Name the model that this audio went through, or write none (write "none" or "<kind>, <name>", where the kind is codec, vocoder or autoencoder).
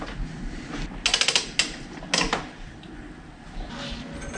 none